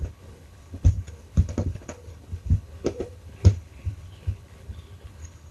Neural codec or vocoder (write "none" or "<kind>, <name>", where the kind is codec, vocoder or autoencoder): codec, HILCodec